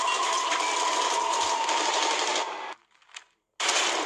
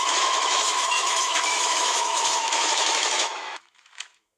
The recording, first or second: first